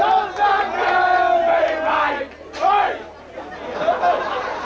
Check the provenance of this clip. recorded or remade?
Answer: recorded